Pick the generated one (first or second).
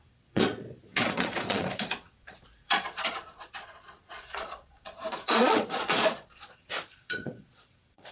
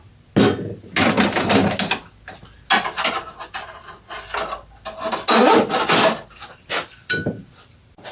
first